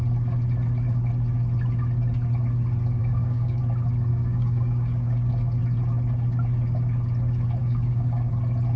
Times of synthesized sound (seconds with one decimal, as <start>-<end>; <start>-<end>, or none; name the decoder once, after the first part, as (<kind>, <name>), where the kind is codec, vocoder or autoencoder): 3.0-3.6 (codec, DAC); 4.1-5.3; 7.6-8.3